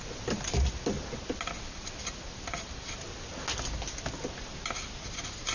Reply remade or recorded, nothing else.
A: recorded